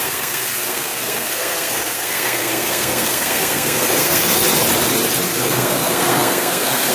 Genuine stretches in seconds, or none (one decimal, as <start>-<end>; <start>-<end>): 4.4-5.3